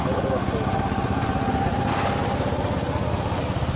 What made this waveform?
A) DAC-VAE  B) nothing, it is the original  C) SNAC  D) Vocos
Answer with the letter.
B